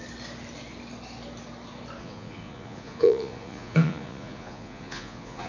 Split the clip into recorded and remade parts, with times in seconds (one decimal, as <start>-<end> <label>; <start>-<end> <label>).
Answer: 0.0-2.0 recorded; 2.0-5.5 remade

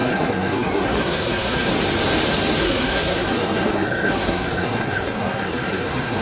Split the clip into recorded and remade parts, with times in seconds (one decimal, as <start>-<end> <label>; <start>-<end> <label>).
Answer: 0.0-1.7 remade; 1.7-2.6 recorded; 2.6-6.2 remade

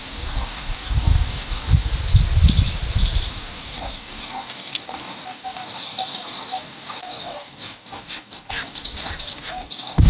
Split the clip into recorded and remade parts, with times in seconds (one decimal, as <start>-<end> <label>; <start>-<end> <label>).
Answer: 0.0-1.9 remade; 1.9-3.3 recorded; 3.3-10.1 remade

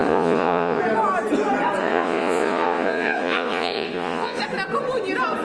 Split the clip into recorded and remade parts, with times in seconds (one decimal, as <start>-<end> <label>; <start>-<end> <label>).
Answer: 0.0-0.8 remade; 0.8-1.8 recorded; 1.8-4.4 remade; 4.4-5.4 recorded

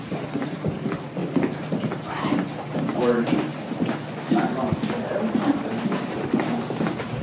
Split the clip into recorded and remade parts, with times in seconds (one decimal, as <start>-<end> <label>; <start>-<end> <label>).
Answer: 0.0-7.2 recorded